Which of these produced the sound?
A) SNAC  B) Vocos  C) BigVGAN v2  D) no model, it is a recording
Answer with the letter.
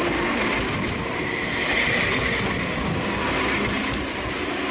D